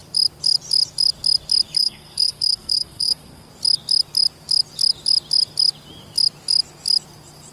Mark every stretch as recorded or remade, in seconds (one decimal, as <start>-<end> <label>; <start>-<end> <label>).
0.0-1.8 recorded; 1.8-3.5 remade; 3.5-7.5 recorded